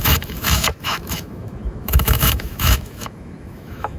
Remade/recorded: remade